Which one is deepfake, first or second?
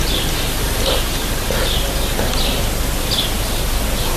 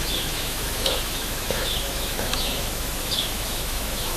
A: second